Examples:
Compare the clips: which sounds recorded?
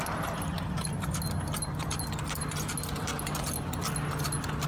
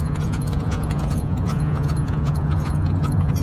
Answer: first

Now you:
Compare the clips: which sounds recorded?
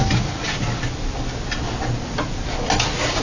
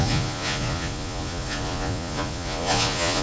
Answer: first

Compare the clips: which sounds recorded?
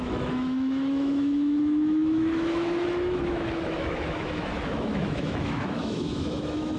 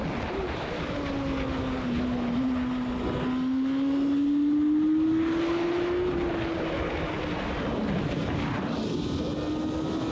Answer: second